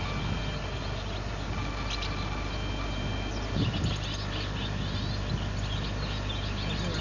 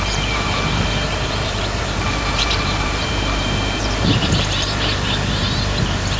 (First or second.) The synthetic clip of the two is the second